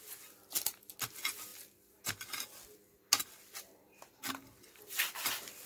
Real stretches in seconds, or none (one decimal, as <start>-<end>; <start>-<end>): 0.0-5.7